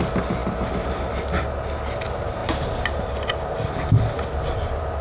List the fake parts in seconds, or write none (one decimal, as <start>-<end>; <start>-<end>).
none